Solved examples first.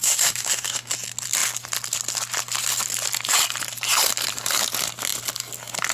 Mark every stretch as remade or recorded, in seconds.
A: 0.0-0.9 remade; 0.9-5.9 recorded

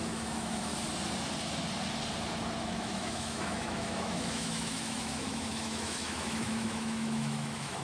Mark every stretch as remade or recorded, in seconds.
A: 0.0-0.7 remade; 0.7-2.6 recorded; 2.6-7.8 remade

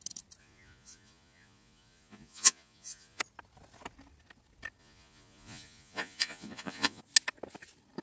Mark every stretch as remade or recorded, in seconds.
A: 0.0-0.4 recorded; 0.4-3.2 remade; 3.2-4.8 recorded; 4.8-7.0 remade; 7.0-8.0 recorded